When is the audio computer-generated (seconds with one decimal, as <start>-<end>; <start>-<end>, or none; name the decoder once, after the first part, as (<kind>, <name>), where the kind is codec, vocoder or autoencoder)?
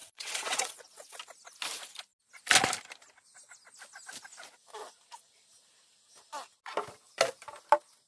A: 0.0-1.2 (vocoder, WaveNeXt)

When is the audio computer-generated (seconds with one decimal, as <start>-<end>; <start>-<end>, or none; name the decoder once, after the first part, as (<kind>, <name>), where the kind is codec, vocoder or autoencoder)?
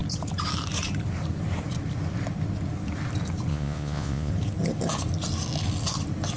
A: 3.5-4.3 (vocoder, Vocos)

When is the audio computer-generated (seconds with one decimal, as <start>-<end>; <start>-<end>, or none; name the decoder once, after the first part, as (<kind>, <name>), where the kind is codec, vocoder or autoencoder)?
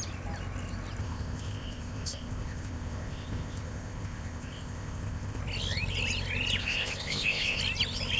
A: 1.0-5.4 (codec, ZipCodec); 6.6-7.6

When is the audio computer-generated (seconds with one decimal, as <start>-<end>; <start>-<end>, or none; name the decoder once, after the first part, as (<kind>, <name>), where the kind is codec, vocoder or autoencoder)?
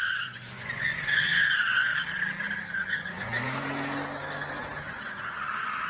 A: 0.0-1.9 (vocoder, Vocos); 2.7-3.3; 4.8-5.9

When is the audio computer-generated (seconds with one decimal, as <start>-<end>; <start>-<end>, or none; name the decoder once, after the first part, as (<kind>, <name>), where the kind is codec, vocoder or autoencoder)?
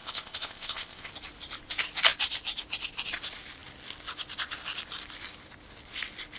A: 0.0-1.1 (codec, ZipCodec)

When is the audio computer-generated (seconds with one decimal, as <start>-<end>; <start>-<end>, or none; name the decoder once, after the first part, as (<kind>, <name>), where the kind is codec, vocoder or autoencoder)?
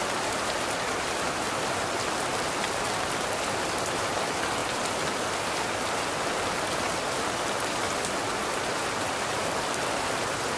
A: none